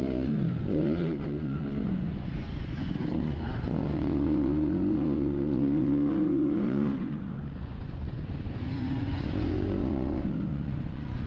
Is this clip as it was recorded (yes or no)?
no